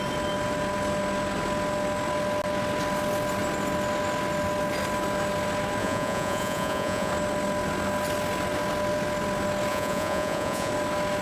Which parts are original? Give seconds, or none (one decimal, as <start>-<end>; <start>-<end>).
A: 0.0-5.8; 7.1-9.7; 10.7-11.2